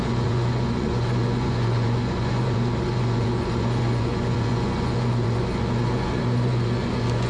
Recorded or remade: remade